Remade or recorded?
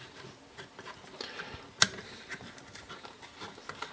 recorded